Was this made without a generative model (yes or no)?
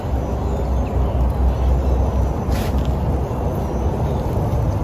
yes